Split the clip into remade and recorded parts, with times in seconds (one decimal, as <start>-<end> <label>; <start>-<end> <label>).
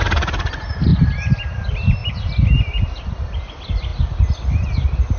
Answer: 0.0-5.2 recorded